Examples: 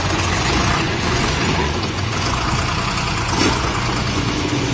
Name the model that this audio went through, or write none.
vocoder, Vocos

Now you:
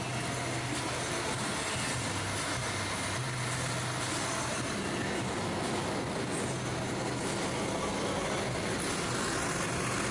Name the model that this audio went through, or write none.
none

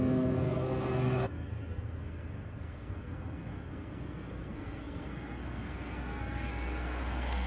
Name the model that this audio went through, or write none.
codec, SNAC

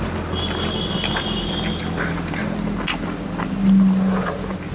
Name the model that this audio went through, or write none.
none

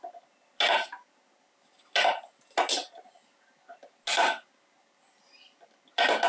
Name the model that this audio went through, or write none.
none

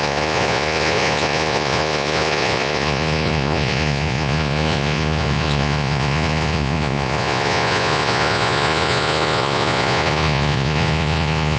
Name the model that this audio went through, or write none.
vocoder, Vocos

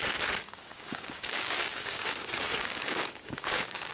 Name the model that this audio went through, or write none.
codec, DAC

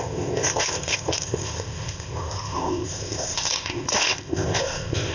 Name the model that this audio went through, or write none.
codec, ZipCodec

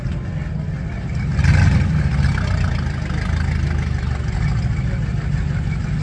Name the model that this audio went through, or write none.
none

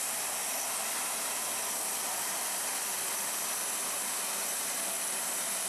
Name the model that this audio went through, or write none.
none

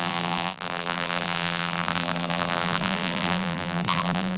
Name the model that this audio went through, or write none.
vocoder, BigVGAN v2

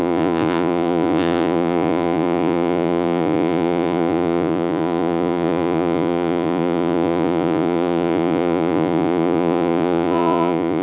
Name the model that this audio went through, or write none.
vocoder, Vocos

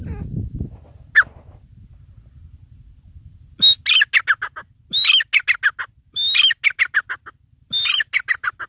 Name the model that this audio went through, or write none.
none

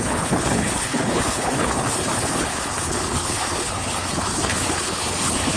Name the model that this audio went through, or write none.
codec, HILCodec